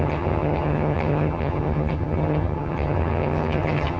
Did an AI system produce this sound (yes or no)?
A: yes